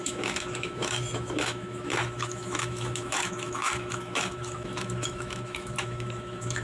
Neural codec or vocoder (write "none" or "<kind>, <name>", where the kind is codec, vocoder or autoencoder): autoencoder, DAC-VAE